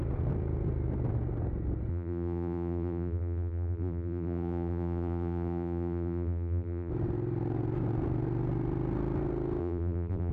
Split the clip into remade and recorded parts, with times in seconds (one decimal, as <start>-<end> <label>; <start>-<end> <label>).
0.0-1.9 recorded; 1.9-6.9 remade; 6.9-9.6 recorded; 9.6-10.3 remade